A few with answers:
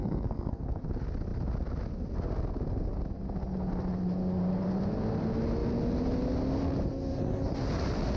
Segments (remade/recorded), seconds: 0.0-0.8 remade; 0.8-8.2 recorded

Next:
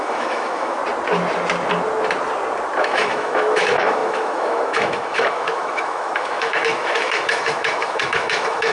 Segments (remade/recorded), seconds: 0.0-0.8 remade; 0.8-2.8 recorded; 2.8-8.7 remade

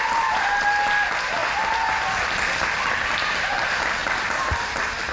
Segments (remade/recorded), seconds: 0.0-5.1 recorded

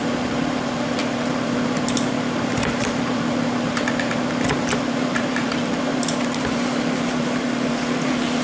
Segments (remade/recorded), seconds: 0.0-8.4 remade